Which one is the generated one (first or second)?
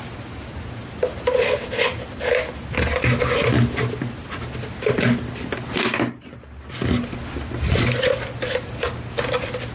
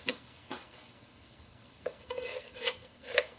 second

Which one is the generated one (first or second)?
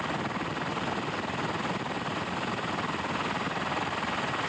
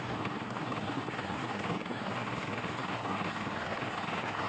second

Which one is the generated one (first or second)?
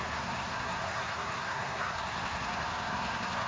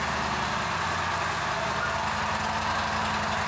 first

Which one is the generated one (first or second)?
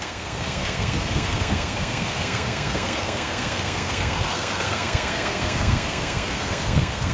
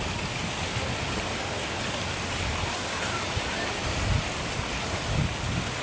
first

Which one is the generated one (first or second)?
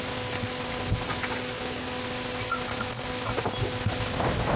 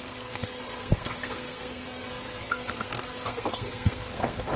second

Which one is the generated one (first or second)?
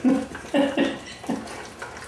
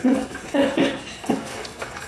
second